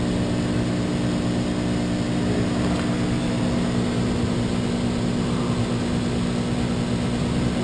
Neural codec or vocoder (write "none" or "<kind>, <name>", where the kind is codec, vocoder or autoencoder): none